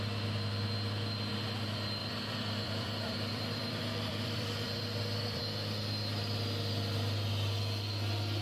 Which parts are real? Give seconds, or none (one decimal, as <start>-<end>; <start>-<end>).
0.0-2.0; 5.4-8.4